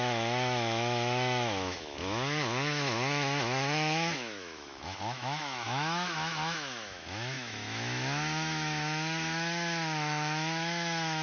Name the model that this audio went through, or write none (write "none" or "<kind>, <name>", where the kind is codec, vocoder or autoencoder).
autoencoder, DAC-VAE